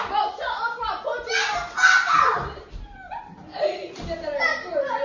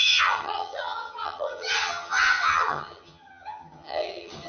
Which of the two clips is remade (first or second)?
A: second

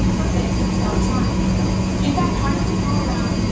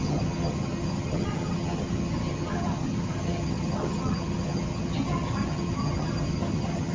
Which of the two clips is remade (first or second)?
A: second